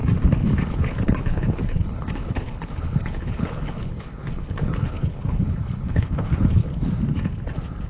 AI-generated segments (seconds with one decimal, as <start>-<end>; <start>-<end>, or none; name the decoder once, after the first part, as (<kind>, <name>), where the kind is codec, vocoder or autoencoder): 0.7-6.6 (codec, HILCodec)